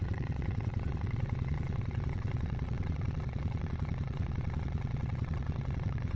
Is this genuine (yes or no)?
no